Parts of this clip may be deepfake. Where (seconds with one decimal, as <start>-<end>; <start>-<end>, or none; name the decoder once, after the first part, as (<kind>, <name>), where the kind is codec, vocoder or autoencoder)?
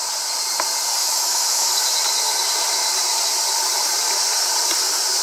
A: 1.0-1.7 (autoencoder, DAC-VAE)